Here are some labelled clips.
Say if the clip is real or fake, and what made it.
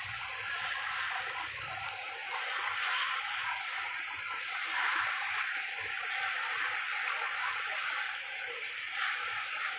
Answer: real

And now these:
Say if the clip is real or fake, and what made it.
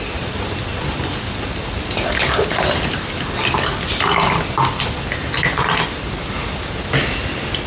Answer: real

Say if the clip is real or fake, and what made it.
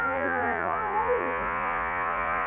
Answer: fake, vocoder, Vocos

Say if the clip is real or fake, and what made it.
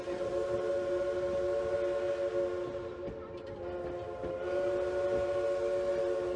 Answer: real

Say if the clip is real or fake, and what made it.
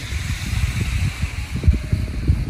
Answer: real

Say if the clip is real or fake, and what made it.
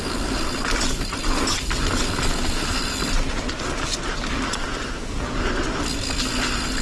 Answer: real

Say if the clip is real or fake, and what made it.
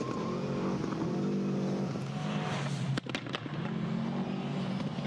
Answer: real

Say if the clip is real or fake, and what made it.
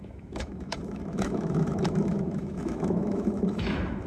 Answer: fake, autoencoder, DAC-VAE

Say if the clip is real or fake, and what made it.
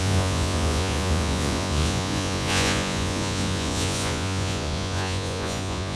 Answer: fake, vocoder, Vocos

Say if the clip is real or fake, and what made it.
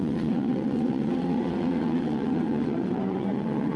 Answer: fake, vocoder, WaveNeXt